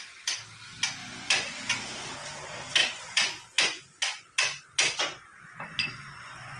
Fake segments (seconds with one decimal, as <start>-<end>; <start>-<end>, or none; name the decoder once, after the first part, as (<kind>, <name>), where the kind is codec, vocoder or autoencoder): 1.0-1.6 (vocoder, Vocos); 2.8-6.6

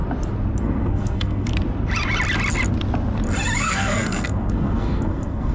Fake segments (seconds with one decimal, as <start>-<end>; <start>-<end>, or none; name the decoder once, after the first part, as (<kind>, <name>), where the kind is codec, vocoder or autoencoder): 0.6-1.5 (codec, SNAC); 3.6-5.5

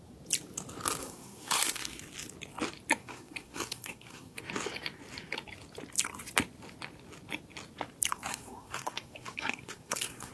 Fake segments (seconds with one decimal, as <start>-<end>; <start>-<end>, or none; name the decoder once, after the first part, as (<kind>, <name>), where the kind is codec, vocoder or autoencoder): 1.0-2.0 (codec, SNAC); 3.0-4.4; 8.3-10.3

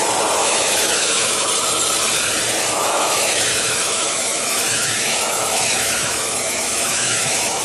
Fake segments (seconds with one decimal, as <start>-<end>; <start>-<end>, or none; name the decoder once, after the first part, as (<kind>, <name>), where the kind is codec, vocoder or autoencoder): 0.4-1.5 (autoencoder, DAC-VAE); 2.8-7.6

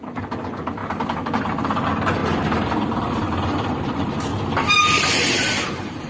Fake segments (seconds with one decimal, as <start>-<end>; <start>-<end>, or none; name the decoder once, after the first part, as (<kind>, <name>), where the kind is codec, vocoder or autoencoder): 0.0-4.3 (vocoder, BigVGAN v2); 5.0-6.1

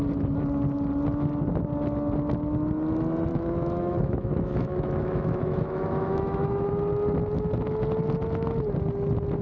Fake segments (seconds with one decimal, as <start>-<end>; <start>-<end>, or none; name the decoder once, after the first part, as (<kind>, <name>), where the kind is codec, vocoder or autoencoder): 3.3-6.7 (autoencoder, DAC-VAE)